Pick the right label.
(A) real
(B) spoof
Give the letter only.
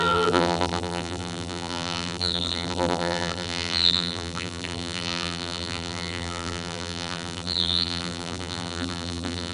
B